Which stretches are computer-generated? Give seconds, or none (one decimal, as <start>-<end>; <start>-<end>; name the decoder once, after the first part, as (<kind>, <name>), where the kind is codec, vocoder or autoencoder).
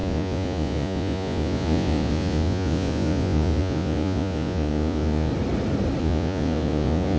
0.0-5.3 (vocoder, Vocos); 6.0-7.2